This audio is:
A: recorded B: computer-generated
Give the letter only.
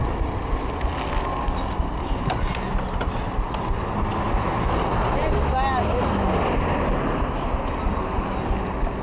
A